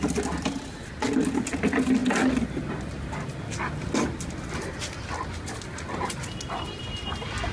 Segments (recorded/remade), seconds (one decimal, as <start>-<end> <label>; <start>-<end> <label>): 0.0-7.5 recorded

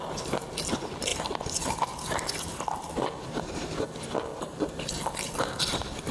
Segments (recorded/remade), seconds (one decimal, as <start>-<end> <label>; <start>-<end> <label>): 0.0-4.3 recorded; 4.3-5.1 remade; 5.1-6.1 recorded

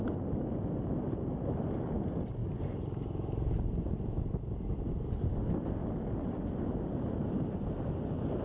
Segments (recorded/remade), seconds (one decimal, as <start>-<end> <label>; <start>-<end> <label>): 0.0-8.4 recorded

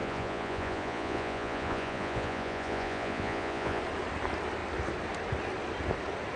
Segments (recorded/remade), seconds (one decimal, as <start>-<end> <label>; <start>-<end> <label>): 0.0-3.8 remade; 3.8-6.4 recorded

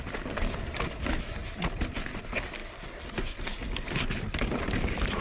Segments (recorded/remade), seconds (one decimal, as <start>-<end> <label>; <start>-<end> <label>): 0.0-5.2 recorded